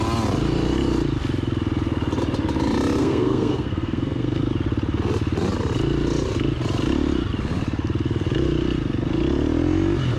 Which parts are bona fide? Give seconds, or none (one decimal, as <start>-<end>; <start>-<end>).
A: 0.0-3.0; 4.4-10.2